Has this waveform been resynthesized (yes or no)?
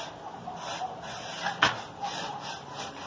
no